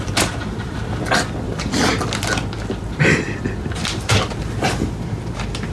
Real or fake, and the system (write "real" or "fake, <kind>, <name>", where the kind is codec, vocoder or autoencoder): fake, vocoder, BigVGAN v2